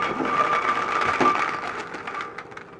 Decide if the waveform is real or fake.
real